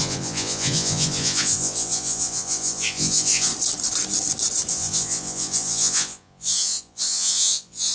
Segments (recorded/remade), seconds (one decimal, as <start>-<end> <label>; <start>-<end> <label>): 0.0-3.5 remade; 3.5-4.7 recorded; 4.7-7.9 remade